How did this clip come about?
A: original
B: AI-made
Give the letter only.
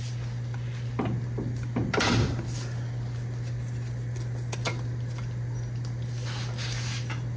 A